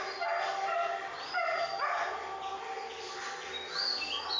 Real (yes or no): yes